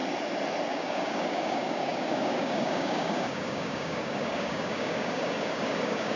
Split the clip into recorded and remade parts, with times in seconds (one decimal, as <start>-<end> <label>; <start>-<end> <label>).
0.0-0.7 recorded; 0.7-6.2 remade